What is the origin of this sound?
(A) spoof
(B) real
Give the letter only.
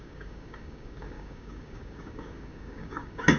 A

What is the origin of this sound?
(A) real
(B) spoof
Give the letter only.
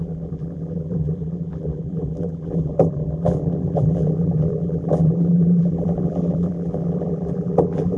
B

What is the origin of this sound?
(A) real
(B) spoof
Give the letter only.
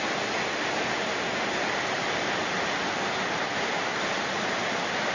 A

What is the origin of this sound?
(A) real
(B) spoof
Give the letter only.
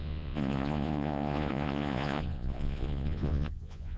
B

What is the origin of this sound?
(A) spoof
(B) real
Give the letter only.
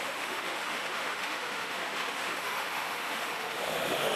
A